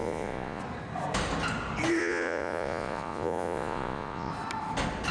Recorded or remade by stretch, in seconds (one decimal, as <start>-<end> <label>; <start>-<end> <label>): 0.0-0.6 remade; 0.6-2.0 recorded; 2.0-4.3 remade; 4.3-5.1 recorded